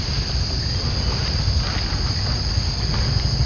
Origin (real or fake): real